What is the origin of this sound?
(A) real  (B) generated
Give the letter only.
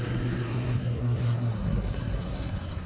B